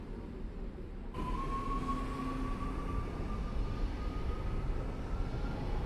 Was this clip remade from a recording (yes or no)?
no